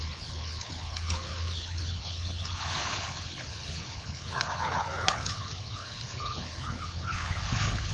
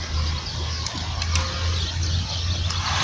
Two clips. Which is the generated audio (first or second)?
first